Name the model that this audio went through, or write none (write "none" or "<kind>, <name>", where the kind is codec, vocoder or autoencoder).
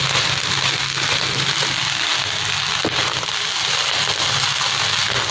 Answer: none